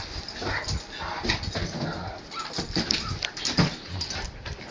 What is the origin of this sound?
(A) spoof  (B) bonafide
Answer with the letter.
B